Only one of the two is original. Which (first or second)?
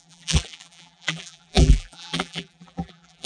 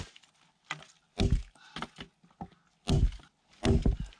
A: second